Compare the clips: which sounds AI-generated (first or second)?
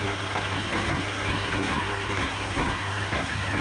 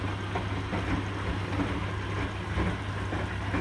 first